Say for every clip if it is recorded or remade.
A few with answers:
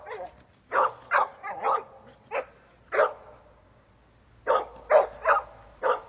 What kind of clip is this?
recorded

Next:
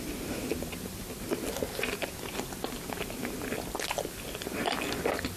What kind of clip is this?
recorded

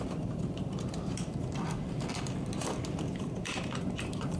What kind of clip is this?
remade